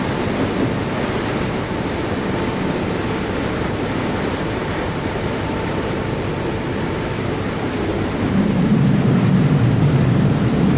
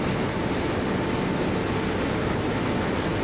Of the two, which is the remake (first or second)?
first